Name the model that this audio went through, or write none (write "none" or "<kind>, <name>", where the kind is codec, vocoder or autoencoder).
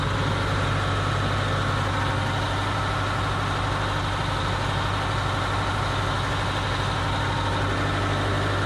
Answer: none